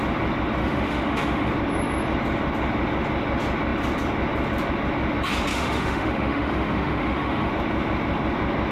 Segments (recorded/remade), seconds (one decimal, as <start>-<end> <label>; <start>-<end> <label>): 0.0-0.6 recorded; 0.6-1.5 remade; 1.5-5.5 recorded; 5.5-7.5 remade; 7.5-8.7 recorded